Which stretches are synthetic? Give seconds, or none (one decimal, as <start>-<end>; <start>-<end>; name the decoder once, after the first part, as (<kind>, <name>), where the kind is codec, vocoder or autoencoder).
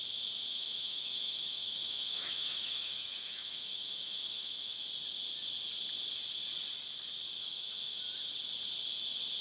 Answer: 0.5-4.8 (autoencoder, DAC-VAE); 7.4-8.0